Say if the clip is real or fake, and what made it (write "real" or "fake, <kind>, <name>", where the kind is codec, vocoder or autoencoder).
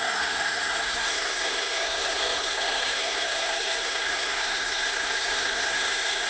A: fake, codec, SNAC